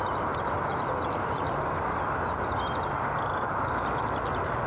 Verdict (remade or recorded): recorded